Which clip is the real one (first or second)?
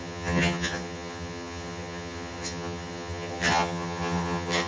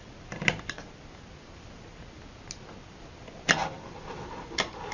second